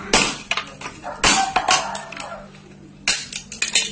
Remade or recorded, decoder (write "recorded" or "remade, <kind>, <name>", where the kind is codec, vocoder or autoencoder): recorded